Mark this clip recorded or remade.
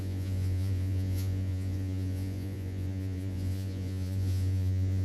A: remade